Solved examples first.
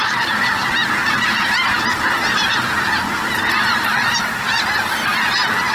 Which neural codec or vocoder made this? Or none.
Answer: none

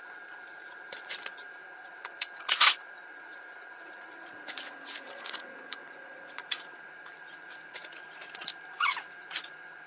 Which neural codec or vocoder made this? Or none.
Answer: vocoder, Vocos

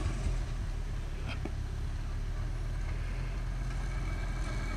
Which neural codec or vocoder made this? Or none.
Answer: none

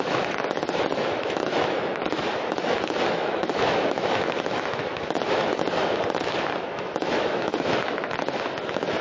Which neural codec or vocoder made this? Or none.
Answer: autoencoder, DAC-VAE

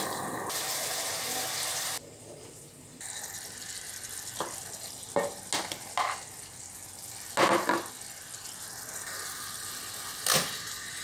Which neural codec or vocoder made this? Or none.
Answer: none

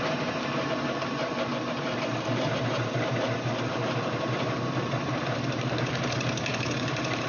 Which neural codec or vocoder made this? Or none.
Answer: vocoder, BigVGAN v2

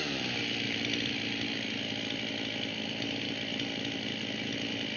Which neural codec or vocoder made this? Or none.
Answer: none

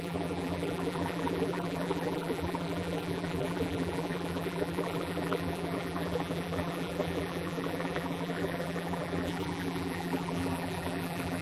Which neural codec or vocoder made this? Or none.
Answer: vocoder, BigVGAN v2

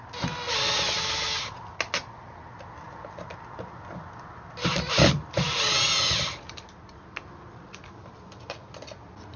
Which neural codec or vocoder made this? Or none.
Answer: none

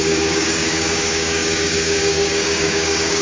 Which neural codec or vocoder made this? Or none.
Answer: codec, DAC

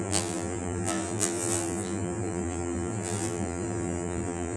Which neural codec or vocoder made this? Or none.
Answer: vocoder, BigVGAN v2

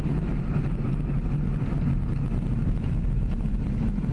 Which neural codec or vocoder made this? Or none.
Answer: none